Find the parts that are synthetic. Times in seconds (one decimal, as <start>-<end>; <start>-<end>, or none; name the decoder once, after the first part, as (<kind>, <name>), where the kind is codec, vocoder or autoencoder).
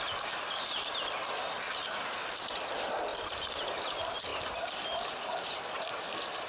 3.1-3.8 (vocoder, BigVGAN v2)